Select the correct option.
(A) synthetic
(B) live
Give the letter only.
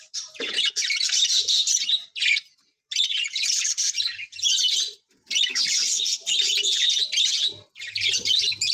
B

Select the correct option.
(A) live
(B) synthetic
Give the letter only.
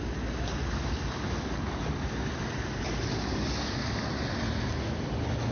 A